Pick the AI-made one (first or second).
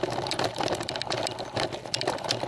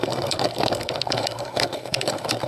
second